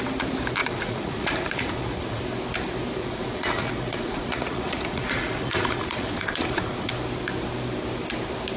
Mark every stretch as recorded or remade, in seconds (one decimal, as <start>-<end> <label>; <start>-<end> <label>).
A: 0.0-0.6 recorded; 0.6-2.2 remade; 2.2-3.0 recorded; 3.0-6.9 remade; 6.9-8.6 recorded